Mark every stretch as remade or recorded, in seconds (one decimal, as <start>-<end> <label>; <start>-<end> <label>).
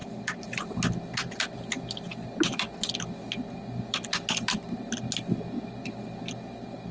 0.0-0.8 remade; 0.8-6.9 recorded